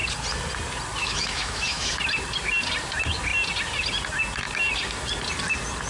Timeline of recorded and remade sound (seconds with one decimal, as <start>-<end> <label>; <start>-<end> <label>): 0.0-1.0 recorded; 1.0-1.9 remade; 1.9-5.9 recorded